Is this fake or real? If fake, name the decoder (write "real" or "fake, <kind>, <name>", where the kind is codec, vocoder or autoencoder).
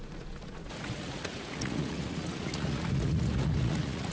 fake, vocoder, Vocos